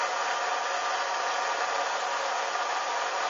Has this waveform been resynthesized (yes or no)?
no